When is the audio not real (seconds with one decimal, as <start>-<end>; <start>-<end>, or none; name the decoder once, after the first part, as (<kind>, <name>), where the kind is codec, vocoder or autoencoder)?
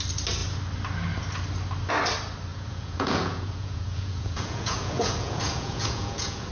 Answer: 2.5-6.5 (vocoder, Vocos)